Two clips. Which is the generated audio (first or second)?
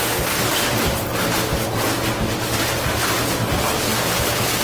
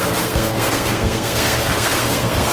second